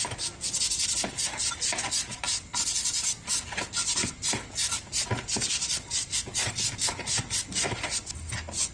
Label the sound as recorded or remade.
recorded